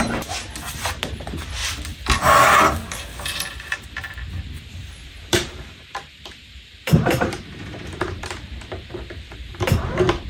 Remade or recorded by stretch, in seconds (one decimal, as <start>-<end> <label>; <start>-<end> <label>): 0.0-4.8 recorded; 4.8-9.9 remade; 9.9-10.3 recorded